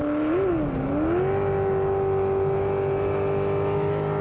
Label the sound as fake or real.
real